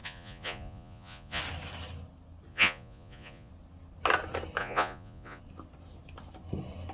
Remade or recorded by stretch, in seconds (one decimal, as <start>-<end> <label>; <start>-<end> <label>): 0.0-1.4 remade; 1.4-2.5 recorded; 2.5-3.5 remade; 3.5-4.6 recorded; 4.6-5.4 remade; 5.4-6.9 recorded